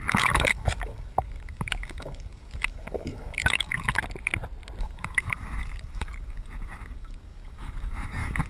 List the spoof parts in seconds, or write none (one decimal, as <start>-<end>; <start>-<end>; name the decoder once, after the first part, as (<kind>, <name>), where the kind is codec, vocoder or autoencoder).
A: 0.0-4.0 (codec, DAC); 4.8-8.5